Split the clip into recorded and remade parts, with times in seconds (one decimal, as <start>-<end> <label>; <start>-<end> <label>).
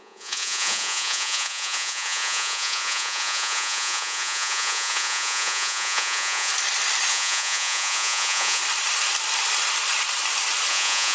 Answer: 0.0-6.5 remade; 6.5-7.1 recorded; 7.1-8.6 remade; 8.6-10.7 recorded; 10.7-11.1 remade